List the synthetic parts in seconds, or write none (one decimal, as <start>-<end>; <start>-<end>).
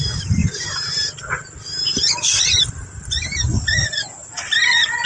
0.4-2.6; 3.3-4.3